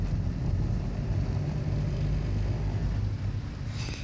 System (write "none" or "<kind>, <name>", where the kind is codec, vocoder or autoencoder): none